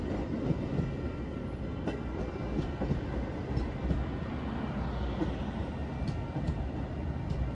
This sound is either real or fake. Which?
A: real